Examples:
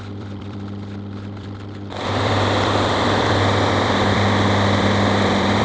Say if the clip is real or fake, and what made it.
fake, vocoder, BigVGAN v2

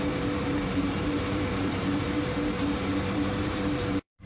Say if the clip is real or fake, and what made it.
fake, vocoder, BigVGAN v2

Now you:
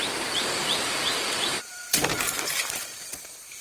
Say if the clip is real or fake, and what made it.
fake, vocoder, BigVGAN v2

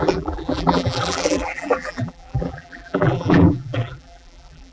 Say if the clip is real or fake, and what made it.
fake, vocoder, BigVGAN v2